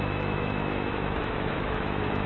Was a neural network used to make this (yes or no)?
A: yes